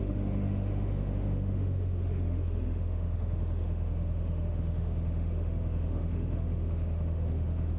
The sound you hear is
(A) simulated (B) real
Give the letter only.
A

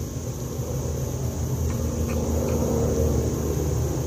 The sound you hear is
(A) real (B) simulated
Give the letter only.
A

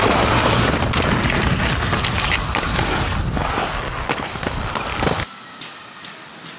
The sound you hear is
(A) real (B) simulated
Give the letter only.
A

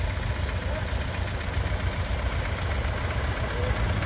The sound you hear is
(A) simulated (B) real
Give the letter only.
B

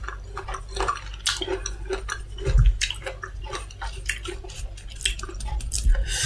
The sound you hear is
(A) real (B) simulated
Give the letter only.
A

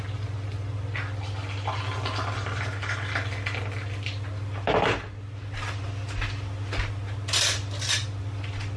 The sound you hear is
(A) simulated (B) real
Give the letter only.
B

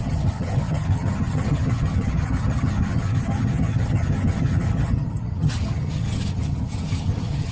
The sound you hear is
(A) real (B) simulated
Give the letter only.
B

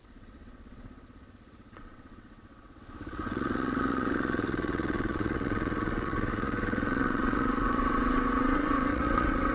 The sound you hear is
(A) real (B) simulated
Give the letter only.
B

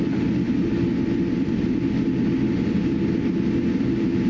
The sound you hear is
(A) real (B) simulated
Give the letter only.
A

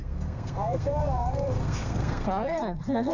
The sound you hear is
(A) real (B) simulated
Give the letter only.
B